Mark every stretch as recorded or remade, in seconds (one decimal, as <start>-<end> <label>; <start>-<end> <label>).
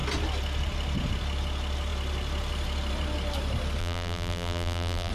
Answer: 0.0-3.8 recorded; 3.8-5.1 remade